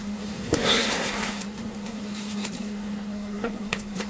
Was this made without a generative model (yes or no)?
no